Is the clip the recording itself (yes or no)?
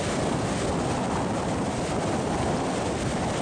yes